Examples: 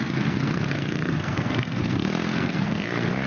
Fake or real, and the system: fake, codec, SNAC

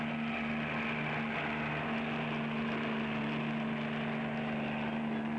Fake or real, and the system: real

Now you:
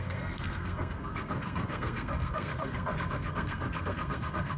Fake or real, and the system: fake, codec, SNAC